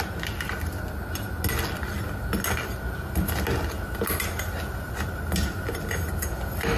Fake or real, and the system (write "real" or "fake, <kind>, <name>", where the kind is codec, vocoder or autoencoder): real